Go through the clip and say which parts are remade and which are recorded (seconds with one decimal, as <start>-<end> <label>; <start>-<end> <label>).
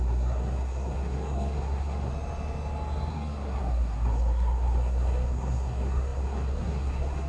0.0-2.1 remade; 2.1-3.1 recorded; 3.1-7.3 remade